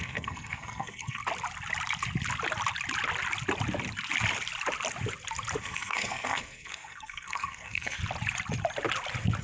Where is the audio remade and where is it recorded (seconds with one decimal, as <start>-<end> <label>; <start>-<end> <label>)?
0.0-1.2 remade; 1.2-5.6 recorded; 5.6-8.0 remade; 8.0-9.4 recorded